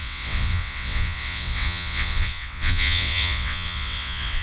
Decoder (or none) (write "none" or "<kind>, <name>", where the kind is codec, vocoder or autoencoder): vocoder, WaveNeXt